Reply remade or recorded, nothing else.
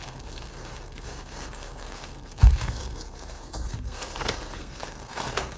remade